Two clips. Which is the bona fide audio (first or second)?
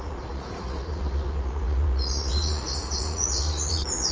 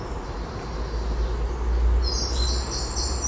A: second